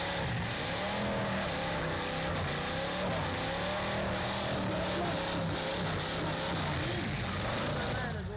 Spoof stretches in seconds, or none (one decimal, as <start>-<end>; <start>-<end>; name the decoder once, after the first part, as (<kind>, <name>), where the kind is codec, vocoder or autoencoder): none